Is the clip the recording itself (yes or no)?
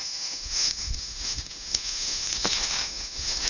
no